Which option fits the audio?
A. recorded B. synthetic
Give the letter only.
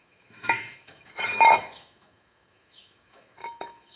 B